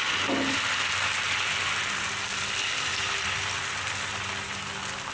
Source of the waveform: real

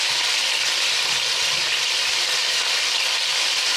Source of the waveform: real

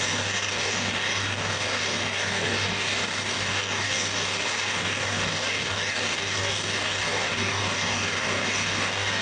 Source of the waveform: fake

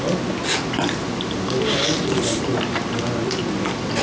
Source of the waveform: real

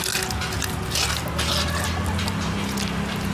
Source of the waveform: real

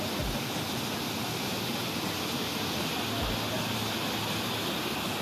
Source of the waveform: real